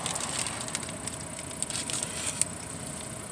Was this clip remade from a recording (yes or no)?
no